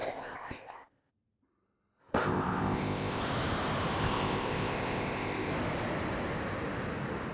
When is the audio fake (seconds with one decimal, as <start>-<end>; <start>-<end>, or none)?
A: 0.0-1.1; 2.0-3.2; 4.0-5.5